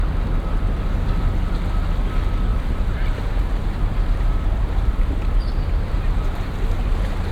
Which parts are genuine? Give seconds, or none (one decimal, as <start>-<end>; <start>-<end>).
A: 0.0-2.5